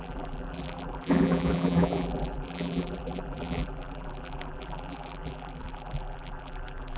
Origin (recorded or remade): remade